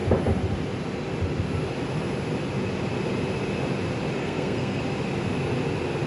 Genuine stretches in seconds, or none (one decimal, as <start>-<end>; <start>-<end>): 0.0-4.2; 4.8-6.1